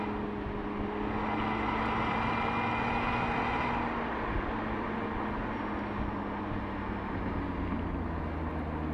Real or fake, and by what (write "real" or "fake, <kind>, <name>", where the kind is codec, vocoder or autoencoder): real